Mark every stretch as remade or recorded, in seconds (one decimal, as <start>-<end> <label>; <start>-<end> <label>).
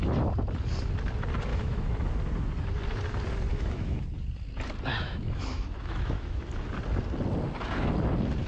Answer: 0.0-1.5 recorded; 1.5-2.1 remade; 2.1-3.5 recorded; 3.5-4.0 remade; 4.0-4.9 recorded; 4.9-6.4 remade; 6.4-8.5 recorded